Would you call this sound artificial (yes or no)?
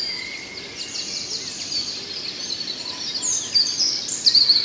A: no